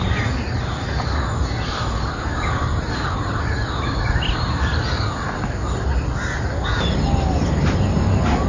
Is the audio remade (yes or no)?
no